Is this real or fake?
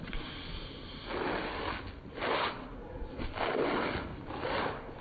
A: real